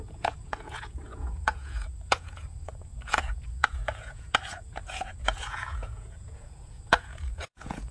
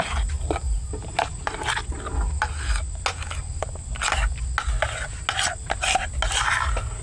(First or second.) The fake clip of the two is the first